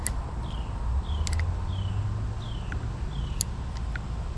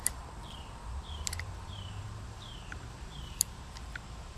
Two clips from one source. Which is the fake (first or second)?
second